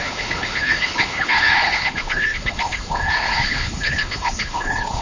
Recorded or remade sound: remade